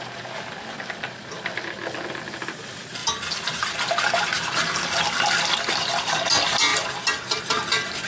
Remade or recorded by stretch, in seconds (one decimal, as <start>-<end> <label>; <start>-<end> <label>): 0.0-8.1 recorded